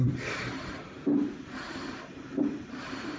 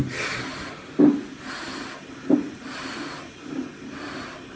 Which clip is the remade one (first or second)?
first